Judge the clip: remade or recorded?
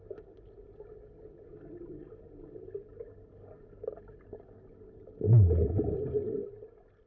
recorded